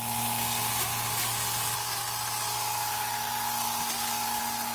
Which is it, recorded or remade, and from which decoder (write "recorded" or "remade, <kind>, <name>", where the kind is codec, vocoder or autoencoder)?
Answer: recorded